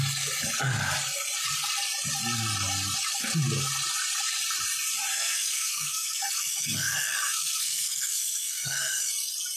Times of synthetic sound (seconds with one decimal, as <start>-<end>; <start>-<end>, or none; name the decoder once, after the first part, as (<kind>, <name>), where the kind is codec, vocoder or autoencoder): 5.1-9.1 (codec, SNAC)